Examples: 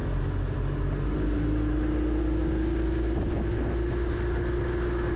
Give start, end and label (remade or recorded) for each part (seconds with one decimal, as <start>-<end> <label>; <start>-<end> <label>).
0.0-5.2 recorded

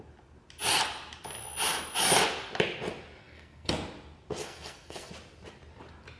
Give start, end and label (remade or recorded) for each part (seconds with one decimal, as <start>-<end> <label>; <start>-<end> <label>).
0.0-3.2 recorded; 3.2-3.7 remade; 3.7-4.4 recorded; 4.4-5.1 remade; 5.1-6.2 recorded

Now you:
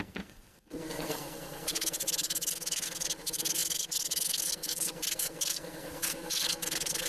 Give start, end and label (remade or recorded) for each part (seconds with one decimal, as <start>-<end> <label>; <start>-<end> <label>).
0.0-7.1 remade